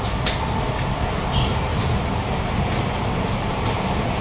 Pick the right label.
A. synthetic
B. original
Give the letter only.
B